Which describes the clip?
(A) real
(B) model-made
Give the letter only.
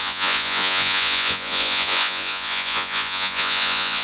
B